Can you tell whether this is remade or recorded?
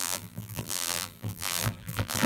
remade